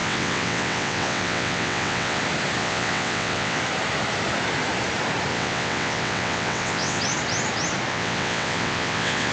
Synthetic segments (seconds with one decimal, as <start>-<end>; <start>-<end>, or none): 0.0-2.2; 2.6-3.6; 5.3-7.0; 7.9-9.3